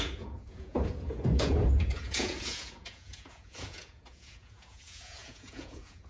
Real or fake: fake